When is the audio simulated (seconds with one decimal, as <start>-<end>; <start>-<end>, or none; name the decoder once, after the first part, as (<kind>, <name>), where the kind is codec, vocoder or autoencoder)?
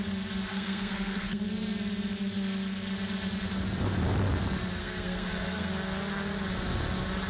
0.5-1.4 (codec, SNAC); 4.8-5.7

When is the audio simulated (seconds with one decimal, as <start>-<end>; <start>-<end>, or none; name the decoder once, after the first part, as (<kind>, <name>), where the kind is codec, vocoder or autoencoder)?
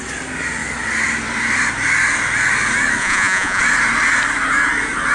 3.0-3.6 (vocoder, Vocos)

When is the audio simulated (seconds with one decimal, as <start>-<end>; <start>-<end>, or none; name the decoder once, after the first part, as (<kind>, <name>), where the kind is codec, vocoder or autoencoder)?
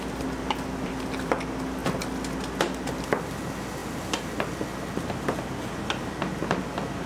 none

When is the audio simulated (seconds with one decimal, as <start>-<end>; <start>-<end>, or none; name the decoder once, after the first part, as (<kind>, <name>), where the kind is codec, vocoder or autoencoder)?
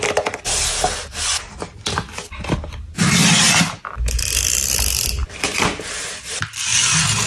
3.2-4.2 (vocoder, BigVGAN v2); 5.2-7.3